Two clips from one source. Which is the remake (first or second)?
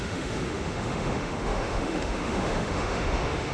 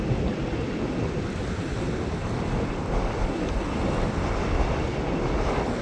first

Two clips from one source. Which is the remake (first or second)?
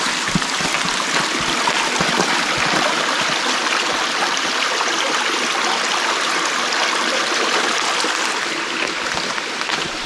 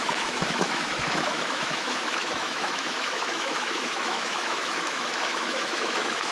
second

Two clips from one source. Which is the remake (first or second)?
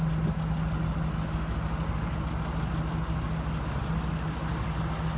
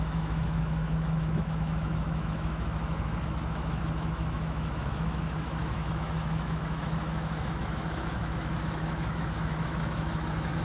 second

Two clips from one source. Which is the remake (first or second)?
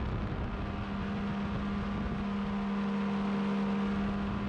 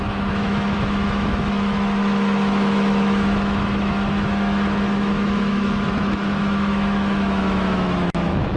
second